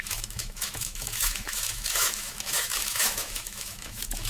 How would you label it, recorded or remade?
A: remade